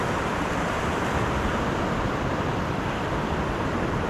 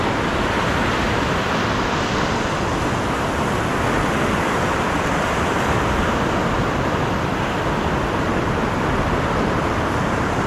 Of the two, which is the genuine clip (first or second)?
second